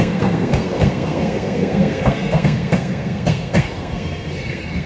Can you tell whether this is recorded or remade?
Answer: remade